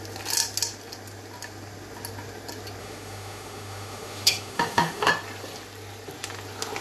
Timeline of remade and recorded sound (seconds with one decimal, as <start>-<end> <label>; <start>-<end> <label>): 0.0-2.8 recorded; 2.8-5.1 remade; 5.1-6.8 recorded